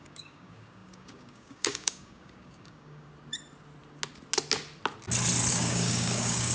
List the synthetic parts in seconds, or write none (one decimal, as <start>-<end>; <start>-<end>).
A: 0.0-3.1; 5.5-6.5

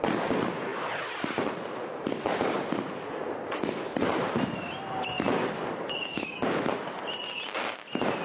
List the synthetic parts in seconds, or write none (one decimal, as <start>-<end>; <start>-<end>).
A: 5.6-6.4

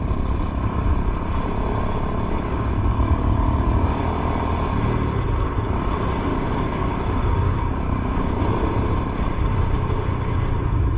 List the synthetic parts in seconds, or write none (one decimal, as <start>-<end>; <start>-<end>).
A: 2.9-4.0; 6.3-8.4

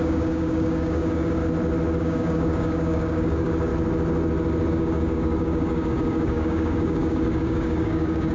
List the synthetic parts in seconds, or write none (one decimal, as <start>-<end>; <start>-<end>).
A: 0.0-1.4; 2.0-3.7; 4.7-8.3

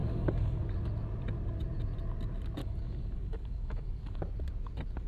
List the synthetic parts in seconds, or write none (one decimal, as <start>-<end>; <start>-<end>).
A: 0.0-0.6; 2.6-4.2

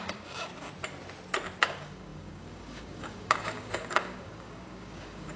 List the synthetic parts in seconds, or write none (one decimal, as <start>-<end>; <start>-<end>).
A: 0.0-0.5; 1.6-5.4